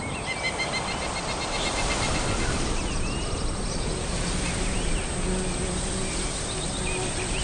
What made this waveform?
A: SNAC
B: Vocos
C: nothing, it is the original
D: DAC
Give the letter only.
C